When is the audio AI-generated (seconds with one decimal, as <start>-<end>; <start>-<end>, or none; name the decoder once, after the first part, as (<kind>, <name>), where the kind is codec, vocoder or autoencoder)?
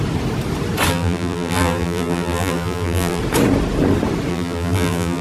0.9-3.2 (vocoder, BigVGAN v2); 4.3-5.2